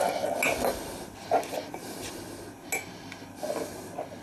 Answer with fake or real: real